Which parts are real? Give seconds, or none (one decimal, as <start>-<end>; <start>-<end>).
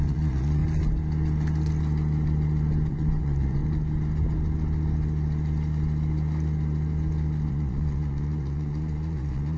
0.6-2.9; 3.6-7.5